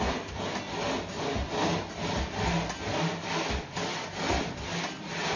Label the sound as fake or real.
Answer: real